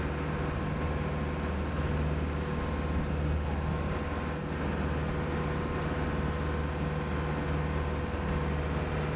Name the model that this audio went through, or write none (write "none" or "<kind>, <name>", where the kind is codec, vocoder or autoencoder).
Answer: none